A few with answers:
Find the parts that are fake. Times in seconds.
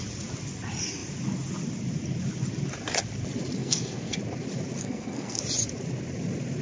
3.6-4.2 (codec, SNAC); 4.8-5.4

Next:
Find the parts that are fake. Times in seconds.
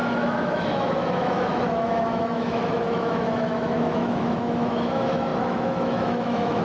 0.0-6.6 (autoencoder, DAC-VAE)